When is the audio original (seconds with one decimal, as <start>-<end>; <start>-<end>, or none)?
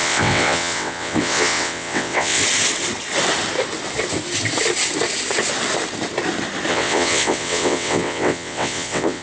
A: 2.4-6.7